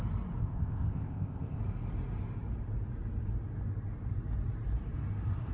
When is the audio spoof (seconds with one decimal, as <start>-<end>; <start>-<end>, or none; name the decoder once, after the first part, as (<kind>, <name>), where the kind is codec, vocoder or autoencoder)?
0.4-1.6 (codec, ZipCodec)

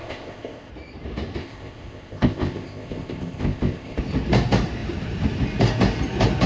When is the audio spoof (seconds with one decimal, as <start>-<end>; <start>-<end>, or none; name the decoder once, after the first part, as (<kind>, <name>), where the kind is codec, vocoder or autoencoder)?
0.0-0.7 (codec, ZipCodec); 1.4-4.0

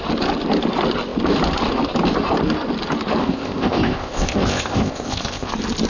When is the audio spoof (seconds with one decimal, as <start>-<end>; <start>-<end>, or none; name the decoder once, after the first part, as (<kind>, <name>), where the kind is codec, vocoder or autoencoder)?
3.2-5.5 (codec, ZipCodec)

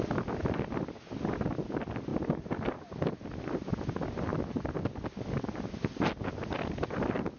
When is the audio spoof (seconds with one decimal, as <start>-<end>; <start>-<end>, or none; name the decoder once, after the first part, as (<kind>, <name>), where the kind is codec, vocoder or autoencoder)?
none

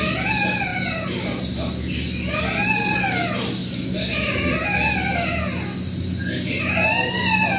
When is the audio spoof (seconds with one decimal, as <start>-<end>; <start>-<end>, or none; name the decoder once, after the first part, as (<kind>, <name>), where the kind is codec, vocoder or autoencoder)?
none

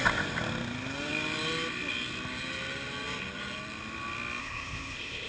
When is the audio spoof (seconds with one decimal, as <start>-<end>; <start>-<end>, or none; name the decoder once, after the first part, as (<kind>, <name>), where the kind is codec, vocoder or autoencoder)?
4.4-5.3 (codec, ZipCodec)

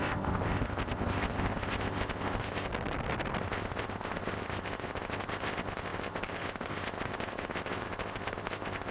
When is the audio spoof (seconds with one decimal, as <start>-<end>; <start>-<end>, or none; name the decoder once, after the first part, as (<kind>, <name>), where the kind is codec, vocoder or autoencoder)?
0.0-2.7 (codec, ZipCodec); 3.4-8.9